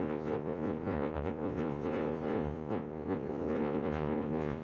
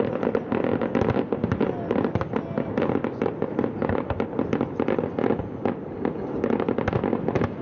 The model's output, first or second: first